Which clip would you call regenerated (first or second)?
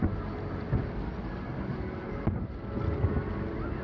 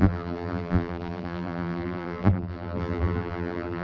second